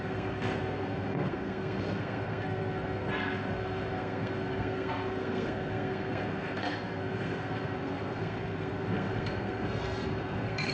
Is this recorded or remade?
remade